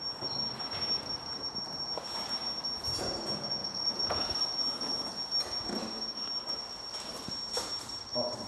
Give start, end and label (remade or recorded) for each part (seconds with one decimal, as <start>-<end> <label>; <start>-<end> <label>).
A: 0.0-3.6 recorded; 3.6-4.3 remade; 4.3-8.5 recorded